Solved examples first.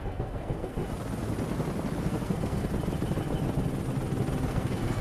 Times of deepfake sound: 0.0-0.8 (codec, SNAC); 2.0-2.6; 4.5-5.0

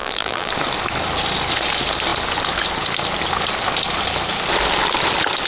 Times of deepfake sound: 0.0-0.5 (vocoder, BigVGAN v2)

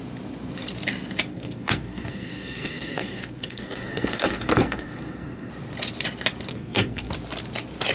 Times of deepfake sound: 1.3-5.5 (codec, SNAC); 6.5-7.1

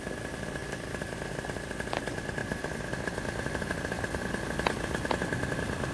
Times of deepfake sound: none

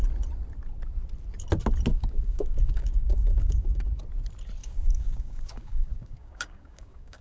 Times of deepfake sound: 1.9-4.0 (codec, DAC); 4.6-7.2

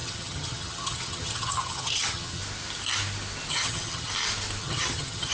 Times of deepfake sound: 0.0-2.4 (vocoder, HiFi-GAN); 3.5-4.1; 4.6-5.3

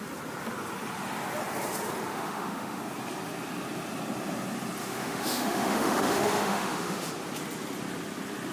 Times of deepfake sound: 2.1-2.8 (autoencoder, DAC-VAE); 4.8-7.1